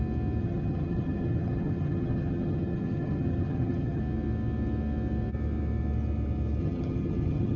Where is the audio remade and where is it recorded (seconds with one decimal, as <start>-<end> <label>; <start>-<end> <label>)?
0.0-0.4 recorded; 0.4-4.0 remade; 4.0-6.6 recorded; 6.6-7.6 remade